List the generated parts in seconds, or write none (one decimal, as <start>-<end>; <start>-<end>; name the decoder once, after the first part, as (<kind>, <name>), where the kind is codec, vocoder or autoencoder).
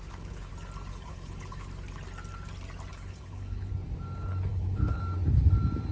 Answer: 0.0-0.5 (codec, HILCodec); 0.9-1.7; 2.9-3.7; 4.5-5.0